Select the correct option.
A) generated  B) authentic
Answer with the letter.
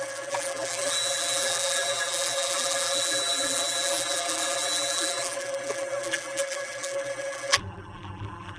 A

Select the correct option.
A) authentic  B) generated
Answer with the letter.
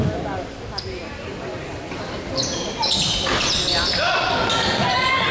A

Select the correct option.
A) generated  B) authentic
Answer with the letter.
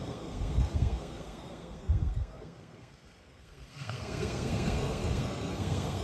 A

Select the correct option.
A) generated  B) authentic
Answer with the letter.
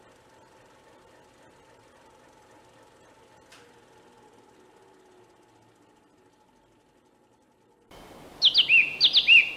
B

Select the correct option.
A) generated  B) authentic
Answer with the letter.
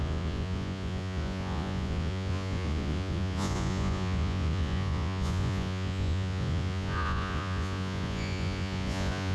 A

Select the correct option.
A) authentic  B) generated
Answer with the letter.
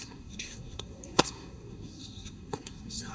B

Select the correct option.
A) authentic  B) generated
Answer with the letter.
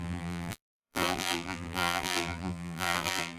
B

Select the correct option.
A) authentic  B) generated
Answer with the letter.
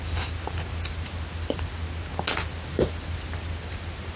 A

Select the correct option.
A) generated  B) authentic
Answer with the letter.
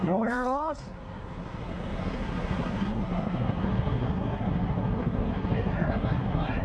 A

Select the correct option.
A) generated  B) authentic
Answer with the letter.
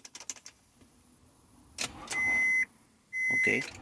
B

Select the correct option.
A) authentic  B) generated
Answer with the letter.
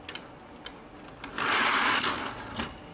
A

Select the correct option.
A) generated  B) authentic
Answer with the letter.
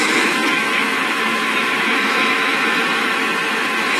A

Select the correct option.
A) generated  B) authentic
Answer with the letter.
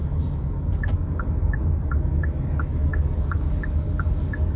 A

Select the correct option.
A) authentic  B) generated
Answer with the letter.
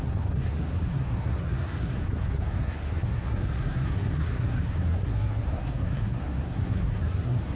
B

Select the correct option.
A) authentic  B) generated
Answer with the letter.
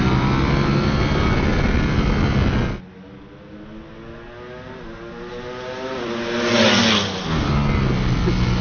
A